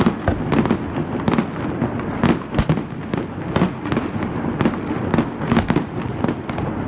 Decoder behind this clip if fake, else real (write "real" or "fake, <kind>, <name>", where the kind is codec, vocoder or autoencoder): real